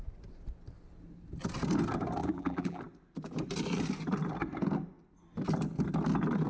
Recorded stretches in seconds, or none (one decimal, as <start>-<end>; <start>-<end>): 0.0-2.2; 2.8-6.5